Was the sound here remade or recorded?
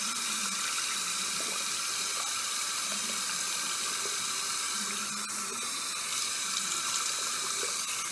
recorded